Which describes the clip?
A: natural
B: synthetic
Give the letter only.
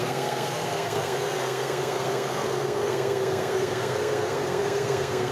B